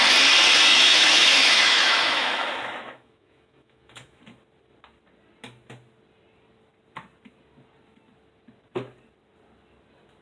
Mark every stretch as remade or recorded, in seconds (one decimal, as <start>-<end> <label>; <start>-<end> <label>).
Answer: 0.0-0.7 recorded; 0.7-4.2 remade; 4.2-10.2 recorded